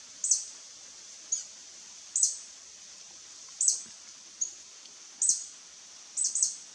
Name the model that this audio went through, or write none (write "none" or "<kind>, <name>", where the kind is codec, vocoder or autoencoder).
none